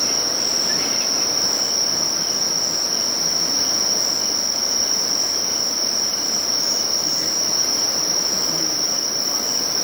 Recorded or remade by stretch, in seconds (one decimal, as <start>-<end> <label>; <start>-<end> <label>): 0.0-6.1 recorded; 6.1-9.3 remade; 9.3-9.8 recorded